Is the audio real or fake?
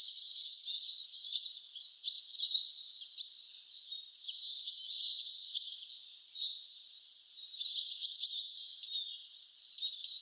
fake